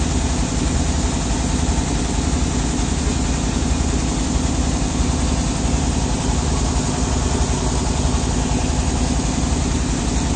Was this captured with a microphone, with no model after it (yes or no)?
yes